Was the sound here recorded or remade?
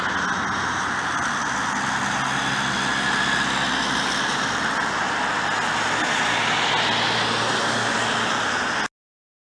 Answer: recorded